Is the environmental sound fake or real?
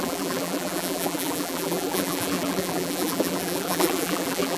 fake